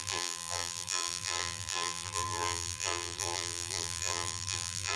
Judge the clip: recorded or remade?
remade